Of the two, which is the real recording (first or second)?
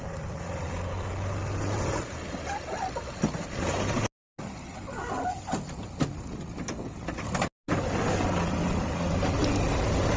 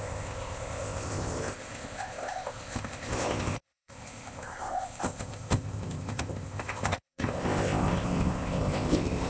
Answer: first